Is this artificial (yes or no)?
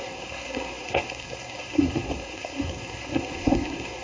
yes